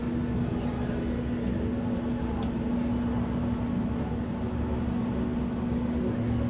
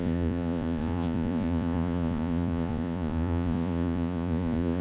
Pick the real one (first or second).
first